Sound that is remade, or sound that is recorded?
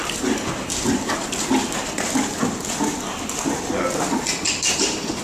recorded